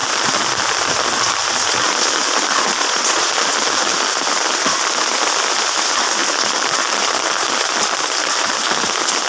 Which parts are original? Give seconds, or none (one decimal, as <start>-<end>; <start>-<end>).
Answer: 0.0-2.8; 3.3-9.3